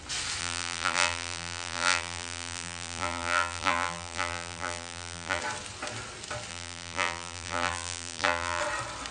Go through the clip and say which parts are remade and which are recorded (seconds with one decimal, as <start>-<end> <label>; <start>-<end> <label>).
0.0-0.4 recorded; 0.4-5.4 remade; 5.4-6.5 recorded; 6.5-8.6 remade; 8.6-9.1 recorded